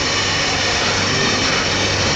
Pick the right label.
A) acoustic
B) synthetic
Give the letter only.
A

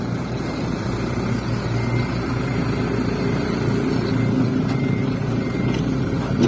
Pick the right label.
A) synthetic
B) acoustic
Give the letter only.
B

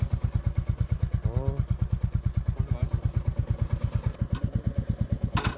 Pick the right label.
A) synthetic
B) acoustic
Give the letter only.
B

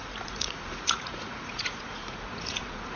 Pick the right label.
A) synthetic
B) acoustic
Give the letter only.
A